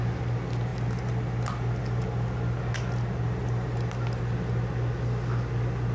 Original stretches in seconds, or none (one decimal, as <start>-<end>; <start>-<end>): 0.0-5.9